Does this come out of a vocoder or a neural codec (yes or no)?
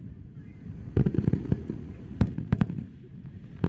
yes